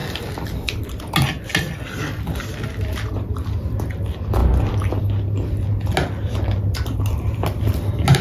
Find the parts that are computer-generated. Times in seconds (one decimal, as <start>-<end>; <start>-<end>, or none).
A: none